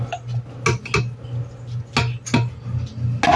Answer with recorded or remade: recorded